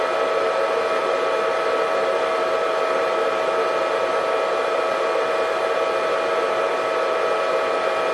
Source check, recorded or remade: recorded